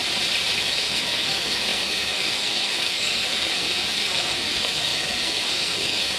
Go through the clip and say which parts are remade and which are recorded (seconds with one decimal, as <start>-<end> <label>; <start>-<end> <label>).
0.0-0.6 recorded; 0.6-6.2 remade